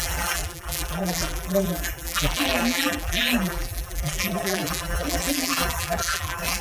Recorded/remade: remade